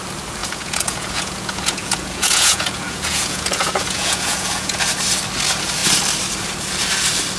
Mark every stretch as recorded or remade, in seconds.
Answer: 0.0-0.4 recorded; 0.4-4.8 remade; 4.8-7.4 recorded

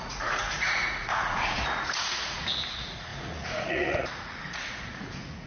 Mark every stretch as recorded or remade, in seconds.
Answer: 0.0-5.5 remade

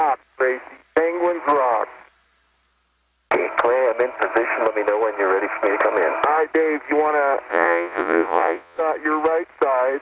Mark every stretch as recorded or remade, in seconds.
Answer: 0.0-7.5 recorded; 7.5-8.8 remade; 8.8-10.0 recorded

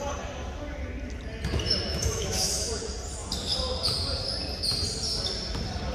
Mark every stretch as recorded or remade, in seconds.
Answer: 0.0-1.9 recorded; 1.9-2.7 remade; 2.7-5.9 recorded

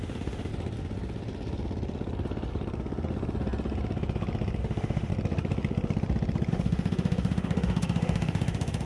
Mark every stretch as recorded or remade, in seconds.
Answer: 0.0-0.5 remade; 0.5-4.6 recorded; 4.6-5.1 remade; 5.1-6.5 recorded; 6.5-8.9 remade

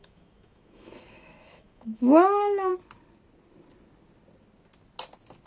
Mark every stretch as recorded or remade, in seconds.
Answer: 0.0-2.7 remade; 2.7-5.5 recorded

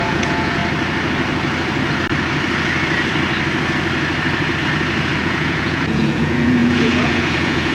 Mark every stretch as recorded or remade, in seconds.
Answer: 0.0-0.6 remade; 0.6-5.2 recorded; 5.2-7.7 remade

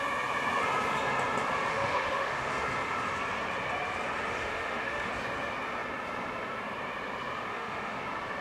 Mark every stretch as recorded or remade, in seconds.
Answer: 0.0-1.7 recorded; 1.7-2.5 remade; 2.5-4.3 recorded; 4.3-5.1 remade; 5.1-7.5 recorded; 7.5-8.0 remade; 8.0-8.4 recorded